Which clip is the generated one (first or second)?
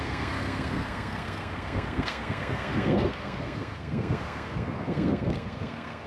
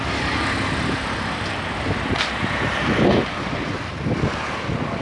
first